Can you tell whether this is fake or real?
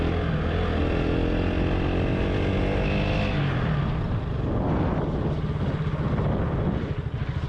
real